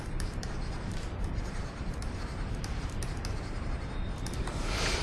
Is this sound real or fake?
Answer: fake